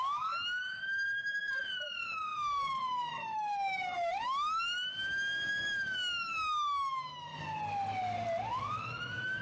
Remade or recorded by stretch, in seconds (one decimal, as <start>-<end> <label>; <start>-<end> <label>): 0.0-7.3 remade; 7.3-8.6 recorded; 8.6-9.4 remade